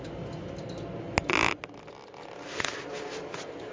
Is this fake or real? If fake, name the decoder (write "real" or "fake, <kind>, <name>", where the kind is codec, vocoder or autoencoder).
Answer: real